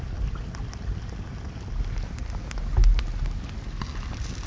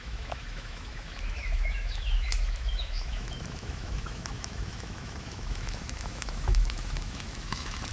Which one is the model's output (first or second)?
second